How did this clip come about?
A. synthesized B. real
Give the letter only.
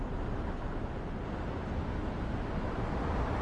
B